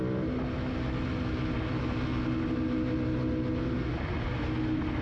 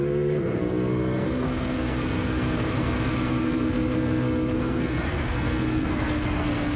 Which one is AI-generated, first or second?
second